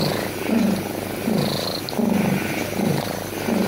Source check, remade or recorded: recorded